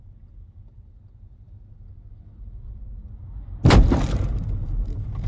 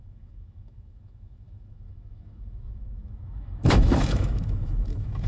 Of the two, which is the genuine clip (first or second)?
first